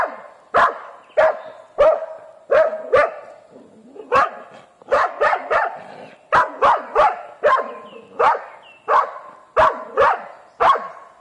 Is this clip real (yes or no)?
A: yes